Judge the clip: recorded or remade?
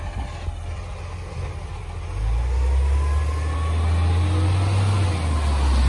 recorded